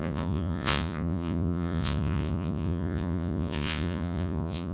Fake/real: fake